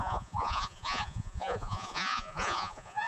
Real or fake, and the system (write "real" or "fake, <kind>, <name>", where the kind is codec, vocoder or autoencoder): fake, vocoder, Vocos